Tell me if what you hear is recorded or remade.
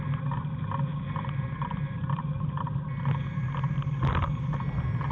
recorded